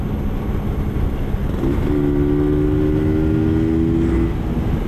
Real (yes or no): yes